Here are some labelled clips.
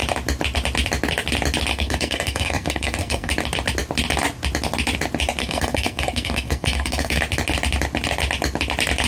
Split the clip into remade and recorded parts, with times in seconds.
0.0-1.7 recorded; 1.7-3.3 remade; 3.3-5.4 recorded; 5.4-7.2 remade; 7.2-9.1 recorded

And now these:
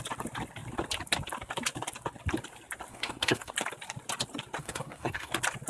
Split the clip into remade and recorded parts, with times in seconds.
0.0-2.9 recorded; 2.9-3.5 remade; 3.5-4.6 recorded; 4.6-5.3 remade; 5.3-5.7 recorded

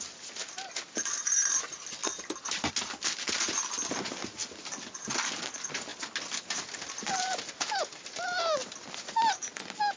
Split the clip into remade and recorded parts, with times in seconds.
0.0-10.0 recorded